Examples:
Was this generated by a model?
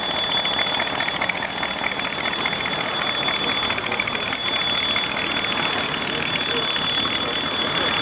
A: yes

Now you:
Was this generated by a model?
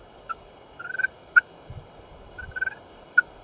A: yes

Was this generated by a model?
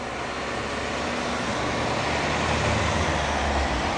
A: no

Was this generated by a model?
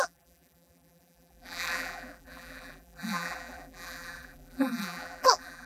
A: yes